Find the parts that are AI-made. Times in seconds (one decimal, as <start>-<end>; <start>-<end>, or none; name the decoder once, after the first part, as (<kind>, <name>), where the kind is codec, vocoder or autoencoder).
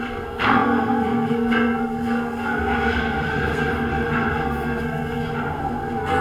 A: 0.0-3.7 (codec, SNAC); 4.3-6.2